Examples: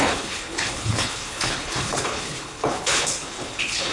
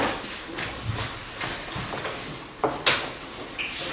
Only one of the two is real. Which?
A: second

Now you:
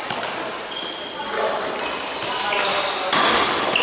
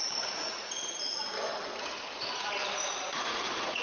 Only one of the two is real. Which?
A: first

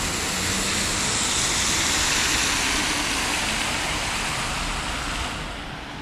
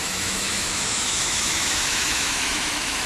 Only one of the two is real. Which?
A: first